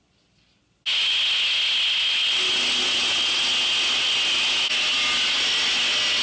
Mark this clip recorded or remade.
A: recorded